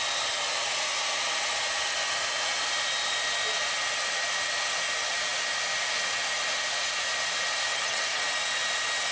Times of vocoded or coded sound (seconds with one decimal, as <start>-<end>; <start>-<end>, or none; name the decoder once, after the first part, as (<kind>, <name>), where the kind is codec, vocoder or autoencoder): 7.7-8.2 (vocoder, HiFi-GAN)